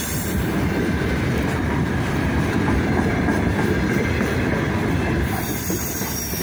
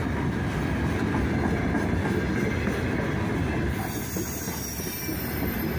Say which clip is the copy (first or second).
first